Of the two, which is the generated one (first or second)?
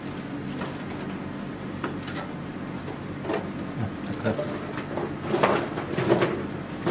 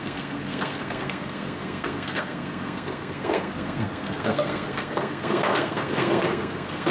second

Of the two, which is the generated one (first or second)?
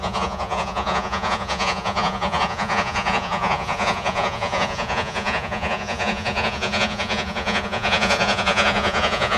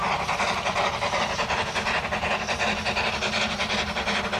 first